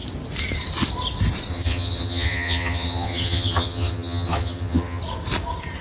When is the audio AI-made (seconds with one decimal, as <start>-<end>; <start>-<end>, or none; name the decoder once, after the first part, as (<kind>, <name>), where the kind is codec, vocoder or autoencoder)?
1.5-5.0 (vocoder, HiFi-GAN)